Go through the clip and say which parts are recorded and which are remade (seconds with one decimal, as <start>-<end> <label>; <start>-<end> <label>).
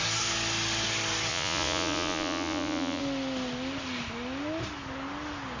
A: 0.0-1.3 recorded; 1.3-3.0 remade; 3.0-5.6 recorded